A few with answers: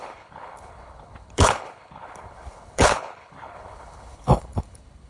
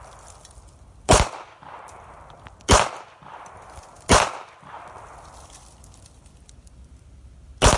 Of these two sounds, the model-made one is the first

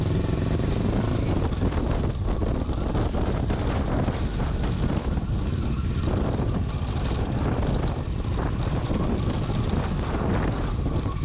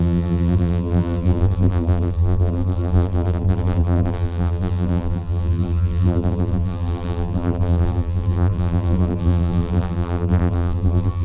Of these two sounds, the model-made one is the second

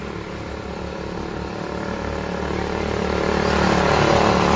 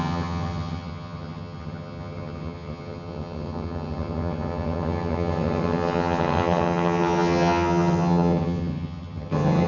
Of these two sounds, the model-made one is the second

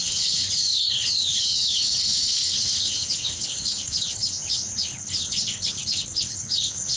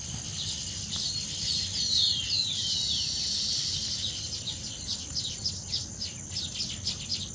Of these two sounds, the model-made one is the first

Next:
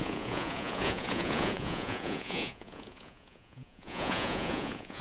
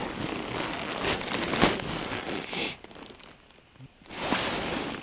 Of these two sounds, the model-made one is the first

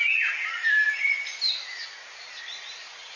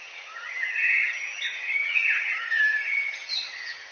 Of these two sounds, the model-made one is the second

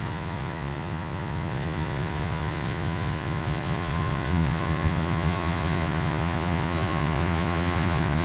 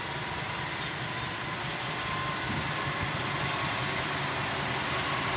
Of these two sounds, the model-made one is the first